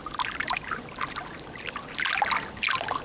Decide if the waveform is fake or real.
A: real